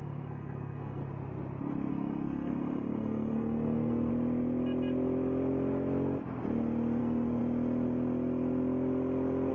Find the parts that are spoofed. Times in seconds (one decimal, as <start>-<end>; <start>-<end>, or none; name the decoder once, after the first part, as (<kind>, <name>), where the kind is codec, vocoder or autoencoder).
0.0-1.0 (codec, SNAC); 1.9-4.1; 7.0-7.4